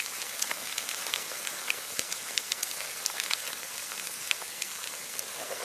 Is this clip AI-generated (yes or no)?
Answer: yes